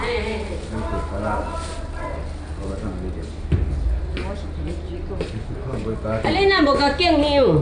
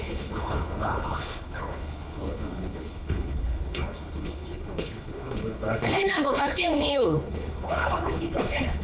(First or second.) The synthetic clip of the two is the second